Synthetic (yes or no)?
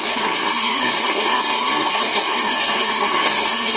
yes